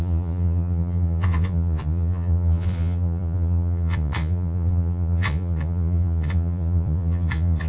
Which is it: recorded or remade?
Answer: remade